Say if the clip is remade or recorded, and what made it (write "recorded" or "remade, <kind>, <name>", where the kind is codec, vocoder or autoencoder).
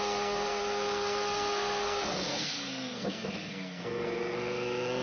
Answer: remade, codec, SNAC